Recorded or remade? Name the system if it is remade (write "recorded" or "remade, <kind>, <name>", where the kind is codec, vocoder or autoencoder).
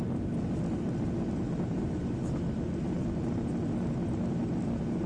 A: recorded